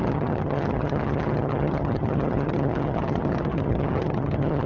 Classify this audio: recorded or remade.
remade